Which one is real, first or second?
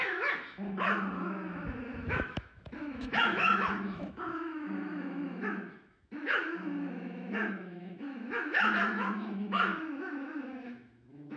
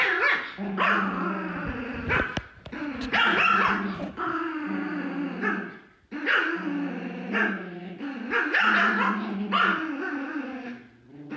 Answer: second